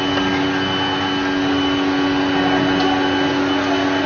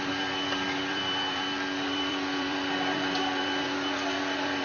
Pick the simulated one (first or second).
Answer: second